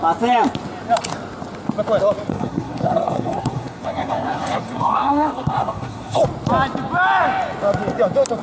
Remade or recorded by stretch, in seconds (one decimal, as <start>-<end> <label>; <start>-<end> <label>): 0.0-2.3 recorded; 2.3-6.2 remade; 6.2-8.4 recorded